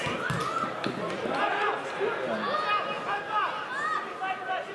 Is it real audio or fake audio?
real